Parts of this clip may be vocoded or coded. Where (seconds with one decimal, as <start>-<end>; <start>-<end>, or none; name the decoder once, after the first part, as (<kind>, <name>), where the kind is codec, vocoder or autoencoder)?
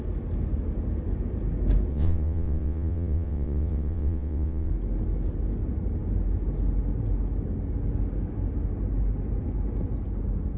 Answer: 1.9-4.7 (vocoder, WaveNeXt)